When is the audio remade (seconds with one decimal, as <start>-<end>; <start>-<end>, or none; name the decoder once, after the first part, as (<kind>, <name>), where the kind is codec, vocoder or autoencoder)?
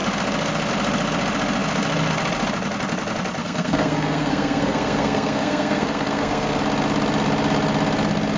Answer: 3.4-6.6 (codec, SNAC)